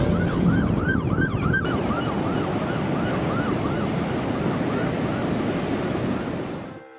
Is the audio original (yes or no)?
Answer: yes